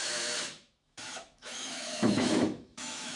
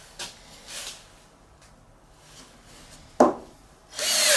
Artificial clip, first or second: first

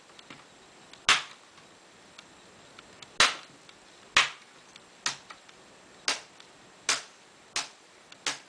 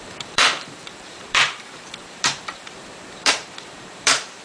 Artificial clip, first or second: second